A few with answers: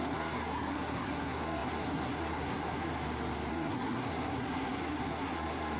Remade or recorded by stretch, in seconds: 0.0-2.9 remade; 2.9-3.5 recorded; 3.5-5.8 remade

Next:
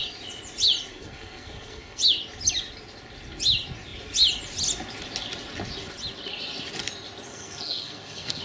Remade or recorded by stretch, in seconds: 0.0-0.9 recorded; 0.9-2.0 remade; 2.0-7.3 recorded; 7.3-8.4 remade

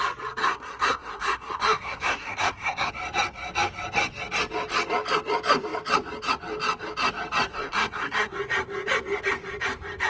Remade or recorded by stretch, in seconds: 0.0-0.4 recorded; 0.4-2.9 remade; 2.9-7.5 recorded; 7.5-8.3 remade; 8.3-10.1 recorded

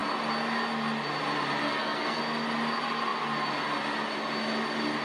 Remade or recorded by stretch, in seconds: 0.0-1.6 recorded; 1.6-2.2 remade; 2.2-5.0 recorded

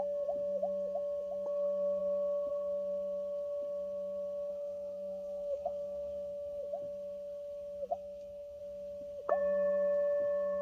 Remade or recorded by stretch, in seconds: 0.0-4.5 recorded; 4.5-6.6 remade; 6.6-7.9 recorded; 7.9-8.6 remade; 8.6-10.6 recorded

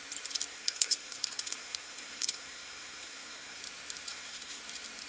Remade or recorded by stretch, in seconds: 0.0-0.5 recorded; 0.5-3.6 remade; 3.6-4.1 recorded; 4.1-4.6 remade; 4.6-5.1 recorded

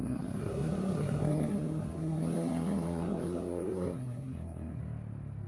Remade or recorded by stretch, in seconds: 0.0-4.8 remade; 4.8-5.5 recorded

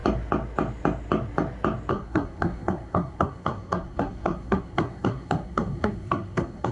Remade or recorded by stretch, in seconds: 0.0-1.9 recorded; 1.9-6.7 remade